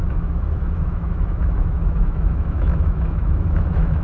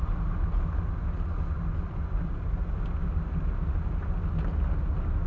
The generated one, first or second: first